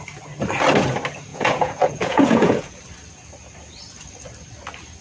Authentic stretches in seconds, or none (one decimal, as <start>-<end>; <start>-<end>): 0.0-1.3; 2.8-5.0